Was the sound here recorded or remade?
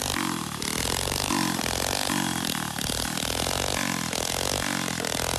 recorded